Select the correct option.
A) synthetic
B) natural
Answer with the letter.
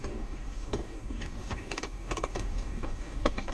A